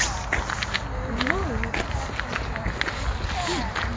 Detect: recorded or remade recorded